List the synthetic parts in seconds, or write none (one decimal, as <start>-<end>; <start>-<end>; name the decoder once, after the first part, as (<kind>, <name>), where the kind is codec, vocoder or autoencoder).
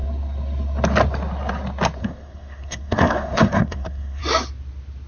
2.0-4.2 (codec, SNAC)